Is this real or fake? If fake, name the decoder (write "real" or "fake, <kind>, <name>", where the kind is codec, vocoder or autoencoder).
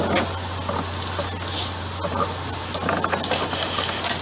real